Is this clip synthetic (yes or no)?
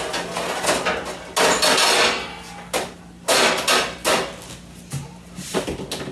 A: no